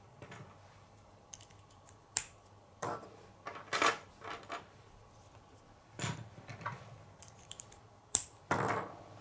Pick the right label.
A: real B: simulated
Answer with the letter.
B